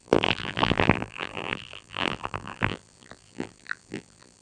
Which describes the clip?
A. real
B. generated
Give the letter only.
B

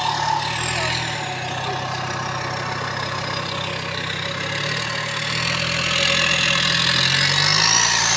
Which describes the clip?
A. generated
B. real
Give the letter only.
B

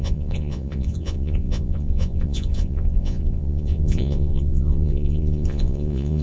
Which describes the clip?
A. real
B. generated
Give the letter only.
B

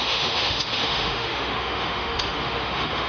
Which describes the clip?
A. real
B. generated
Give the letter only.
B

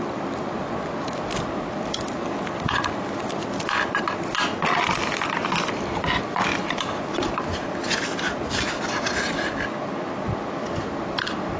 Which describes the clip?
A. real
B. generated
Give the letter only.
A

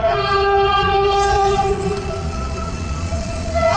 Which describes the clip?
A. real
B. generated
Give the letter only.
B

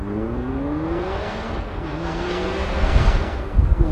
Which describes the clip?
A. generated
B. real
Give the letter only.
A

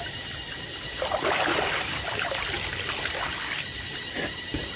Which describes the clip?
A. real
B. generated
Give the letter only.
A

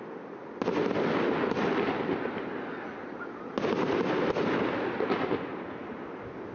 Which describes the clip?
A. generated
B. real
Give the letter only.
B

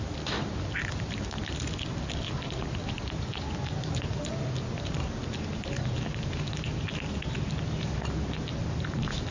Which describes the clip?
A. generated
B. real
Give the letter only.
B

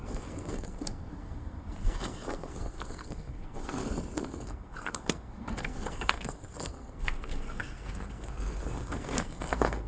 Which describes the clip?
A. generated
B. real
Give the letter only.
A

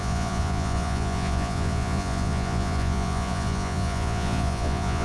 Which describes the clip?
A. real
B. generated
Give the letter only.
B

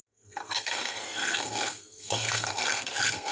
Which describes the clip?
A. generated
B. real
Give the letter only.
A